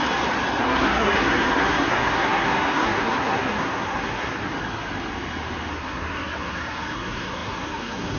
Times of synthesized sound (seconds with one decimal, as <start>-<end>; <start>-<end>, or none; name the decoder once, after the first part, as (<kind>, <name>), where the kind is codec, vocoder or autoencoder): 0.6-4.4 (codec, SNAC); 5.7-8.2